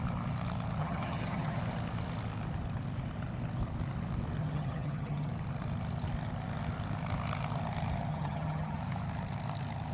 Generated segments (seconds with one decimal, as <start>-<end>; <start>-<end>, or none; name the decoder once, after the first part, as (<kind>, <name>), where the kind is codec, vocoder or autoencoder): 0.8-1.6 (vocoder, HiFi-GAN); 4.4-5.3; 8.1-8.8